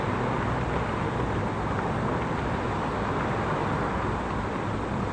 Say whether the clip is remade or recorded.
recorded